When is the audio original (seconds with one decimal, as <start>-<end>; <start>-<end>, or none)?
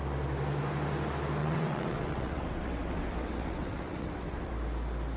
0.0-1.4; 4.5-5.2